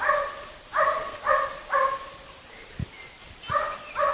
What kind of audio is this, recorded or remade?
recorded